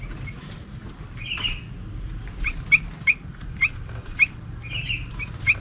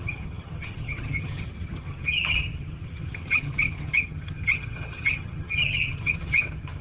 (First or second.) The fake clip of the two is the second